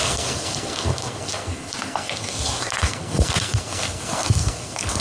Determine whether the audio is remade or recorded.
remade